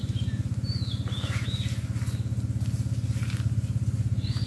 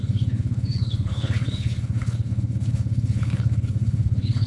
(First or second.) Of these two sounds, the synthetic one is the second